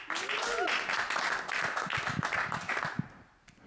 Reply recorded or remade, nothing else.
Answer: recorded